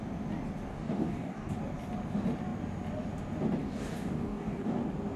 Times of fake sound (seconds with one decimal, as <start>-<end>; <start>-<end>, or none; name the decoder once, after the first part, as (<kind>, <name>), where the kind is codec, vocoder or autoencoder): 0.7-1.5 (codec, DAC); 3.6-4.8